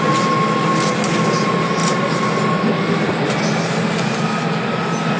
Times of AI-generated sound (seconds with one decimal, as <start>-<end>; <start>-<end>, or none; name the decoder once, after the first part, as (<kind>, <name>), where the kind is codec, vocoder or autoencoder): none

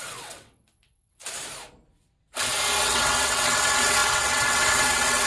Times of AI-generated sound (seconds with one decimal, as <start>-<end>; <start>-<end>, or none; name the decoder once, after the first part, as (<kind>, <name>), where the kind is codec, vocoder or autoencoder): 0.0-1.2 (vocoder, WaveNeXt); 2.8-5.3

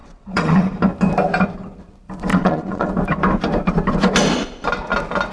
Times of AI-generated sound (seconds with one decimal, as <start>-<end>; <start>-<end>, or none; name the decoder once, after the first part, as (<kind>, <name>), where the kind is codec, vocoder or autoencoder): 0.0-0.7 (vocoder, WaveNeXt); 2.3-2.9

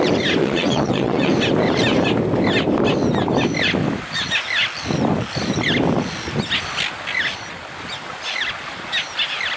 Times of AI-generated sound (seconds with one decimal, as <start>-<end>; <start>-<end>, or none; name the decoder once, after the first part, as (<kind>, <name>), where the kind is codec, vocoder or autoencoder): 0.4-1.3 (vocoder, WaveNeXt)

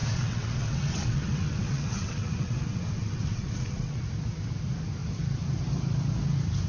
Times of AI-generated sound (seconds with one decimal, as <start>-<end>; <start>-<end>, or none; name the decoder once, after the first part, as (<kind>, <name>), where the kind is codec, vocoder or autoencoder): 0.0-4.0 (vocoder, WaveNeXt)

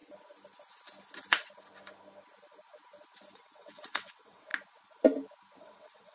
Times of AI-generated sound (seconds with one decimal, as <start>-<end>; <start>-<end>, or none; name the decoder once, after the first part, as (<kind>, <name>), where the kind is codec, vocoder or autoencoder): 3.3-4.5 (vocoder, WaveNeXt); 5.6-6.1